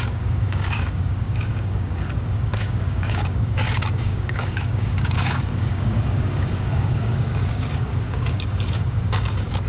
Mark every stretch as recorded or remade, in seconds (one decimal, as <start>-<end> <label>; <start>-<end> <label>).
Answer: 0.0-9.7 remade